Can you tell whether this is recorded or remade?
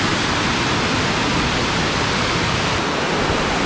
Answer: recorded